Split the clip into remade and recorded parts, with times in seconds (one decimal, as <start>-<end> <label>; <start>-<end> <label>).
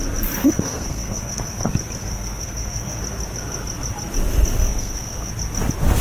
0.0-0.4 recorded; 0.4-1.6 remade; 1.6-2.0 recorded; 2.0-3.0 remade; 3.0-4.6 recorded; 4.6-5.3 remade; 5.3-6.0 recorded